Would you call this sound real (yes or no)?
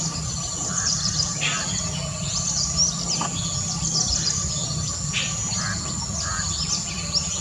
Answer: yes